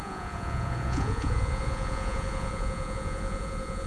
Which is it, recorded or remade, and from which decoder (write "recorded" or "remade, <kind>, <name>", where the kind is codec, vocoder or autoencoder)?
remade, vocoder, Vocos